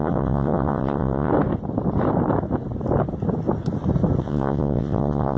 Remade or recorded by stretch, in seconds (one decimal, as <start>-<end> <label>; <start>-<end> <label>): 0.0-1.3 remade; 1.3-4.2 recorded; 4.2-5.4 remade